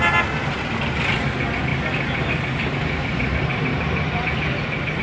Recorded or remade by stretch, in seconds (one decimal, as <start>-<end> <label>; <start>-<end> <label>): 0.0-5.0 recorded